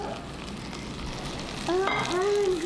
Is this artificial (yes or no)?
no